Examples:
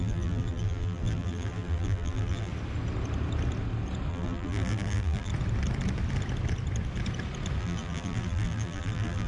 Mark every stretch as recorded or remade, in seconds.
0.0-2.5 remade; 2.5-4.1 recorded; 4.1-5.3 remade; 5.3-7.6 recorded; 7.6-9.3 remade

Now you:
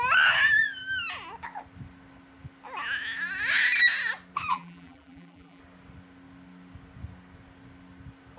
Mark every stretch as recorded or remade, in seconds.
0.0-4.5 recorded; 4.5-5.6 remade; 5.6-8.4 recorded

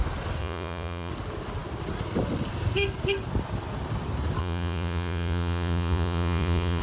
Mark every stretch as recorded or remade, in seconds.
0.0-0.4 recorded; 0.4-1.1 remade; 1.1-4.4 recorded; 4.4-6.8 remade

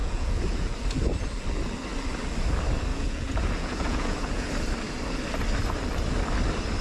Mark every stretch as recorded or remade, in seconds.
0.0-0.8 remade; 0.8-2.9 recorded; 2.9-4.5 remade; 4.5-6.8 recorded

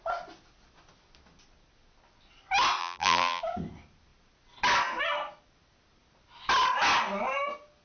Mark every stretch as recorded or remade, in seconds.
0.0-2.8 recorded; 2.8-3.4 remade; 3.4-7.8 recorded

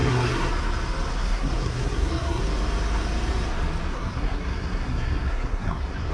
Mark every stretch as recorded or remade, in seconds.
0.0-0.5 remade; 0.5-1.1 recorded; 1.1-2.4 remade; 2.4-3.9 recorded; 3.9-6.1 remade

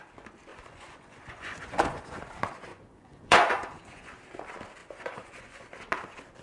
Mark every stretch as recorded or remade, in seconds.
0.0-0.5 recorded; 0.5-2.3 remade; 2.3-2.7 recorded; 2.7-4.1 remade; 4.1-4.8 recorded; 4.8-5.7 remade; 5.7-6.4 recorded

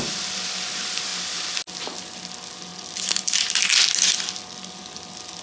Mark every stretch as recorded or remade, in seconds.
0.0-5.4 recorded